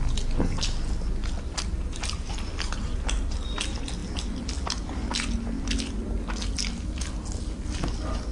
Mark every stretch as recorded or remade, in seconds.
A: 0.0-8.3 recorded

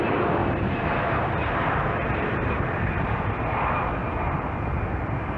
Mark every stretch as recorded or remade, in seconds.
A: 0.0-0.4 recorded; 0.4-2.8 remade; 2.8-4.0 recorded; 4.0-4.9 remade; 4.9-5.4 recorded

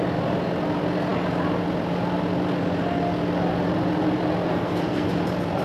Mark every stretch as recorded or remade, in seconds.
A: 0.0-4.5 recorded; 4.5-5.1 remade; 5.1-5.6 recorded

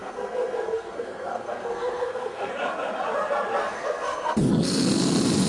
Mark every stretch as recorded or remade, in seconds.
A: 0.0-2.5 remade; 2.5-3.6 recorded; 3.6-4.4 remade; 4.4-5.5 recorded

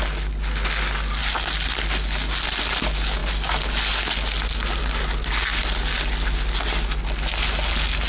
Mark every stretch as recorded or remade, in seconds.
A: 0.0-8.1 recorded